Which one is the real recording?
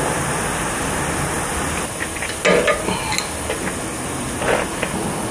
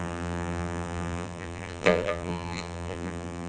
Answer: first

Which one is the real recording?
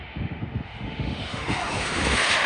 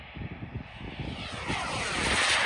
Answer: second